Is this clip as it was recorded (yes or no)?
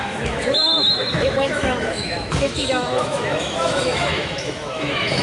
no